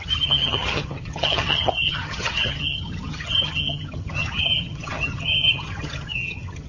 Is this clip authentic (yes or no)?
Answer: no